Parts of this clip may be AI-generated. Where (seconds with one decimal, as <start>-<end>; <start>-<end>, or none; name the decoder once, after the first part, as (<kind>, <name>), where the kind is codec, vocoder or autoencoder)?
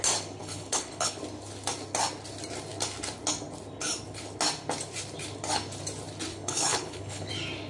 0.4-1.2 (codec, HILCodec); 6.3-7.3